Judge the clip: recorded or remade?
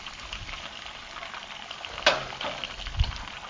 recorded